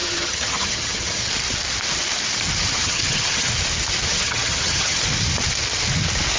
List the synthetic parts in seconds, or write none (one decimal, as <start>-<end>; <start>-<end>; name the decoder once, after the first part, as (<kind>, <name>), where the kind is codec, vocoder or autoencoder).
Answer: 0.0-1.3 (vocoder, HiFi-GAN); 2.7-3.5; 4.1-5.0